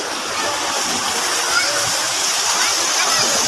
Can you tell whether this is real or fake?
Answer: real